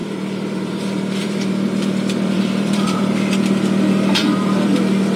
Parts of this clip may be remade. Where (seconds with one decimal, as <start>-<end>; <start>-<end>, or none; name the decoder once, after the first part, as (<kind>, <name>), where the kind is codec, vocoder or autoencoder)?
0.0-3.1 (vocoder, BigVGAN v2); 4.2-4.8